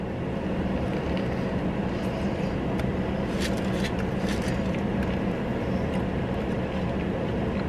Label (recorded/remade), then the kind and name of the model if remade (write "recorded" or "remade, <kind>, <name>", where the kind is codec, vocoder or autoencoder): recorded